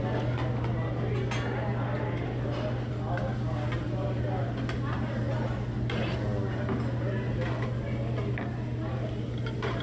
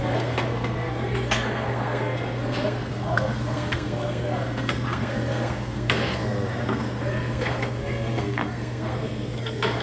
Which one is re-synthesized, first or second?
second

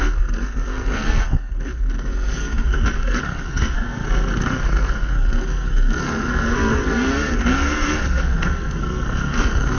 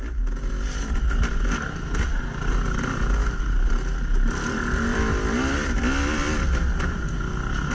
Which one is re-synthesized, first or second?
first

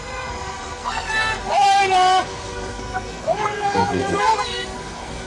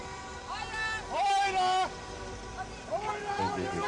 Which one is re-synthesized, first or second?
first